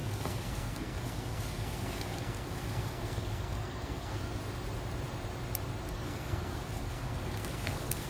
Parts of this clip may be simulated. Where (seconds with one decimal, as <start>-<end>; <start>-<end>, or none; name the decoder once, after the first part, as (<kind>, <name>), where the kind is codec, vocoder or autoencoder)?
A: 0.0-4.4 (codec, SNAC); 5.9-8.1